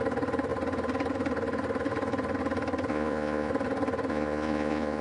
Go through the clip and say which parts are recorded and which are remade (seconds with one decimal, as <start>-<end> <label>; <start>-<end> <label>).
0.0-2.9 recorded; 2.9-3.5 remade; 3.5-4.1 recorded; 4.1-5.0 remade